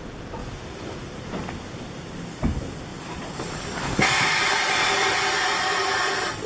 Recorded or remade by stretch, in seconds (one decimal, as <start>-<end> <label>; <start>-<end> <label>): 0.0-0.4 recorded; 0.4-1.9 remade; 1.9-2.9 recorded; 2.9-6.1 remade; 6.1-6.5 recorded